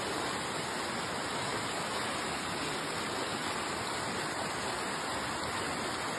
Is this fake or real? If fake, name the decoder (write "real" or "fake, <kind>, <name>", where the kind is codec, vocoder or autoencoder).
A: real